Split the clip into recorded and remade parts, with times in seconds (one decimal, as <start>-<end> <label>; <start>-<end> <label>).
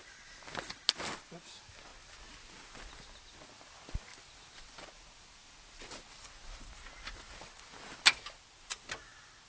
0.0-9.5 recorded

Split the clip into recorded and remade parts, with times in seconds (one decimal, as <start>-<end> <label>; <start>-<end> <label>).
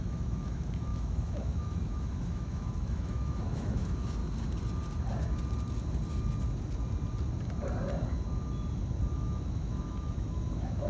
0.0-4.2 remade; 4.2-9.2 recorded; 9.2-10.9 remade